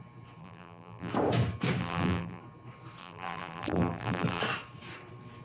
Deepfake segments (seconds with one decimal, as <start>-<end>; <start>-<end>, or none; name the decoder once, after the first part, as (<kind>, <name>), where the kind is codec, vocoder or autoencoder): 0.4-1.1 (vocoder, BigVGAN v2); 1.8-2.4; 3.0-4.4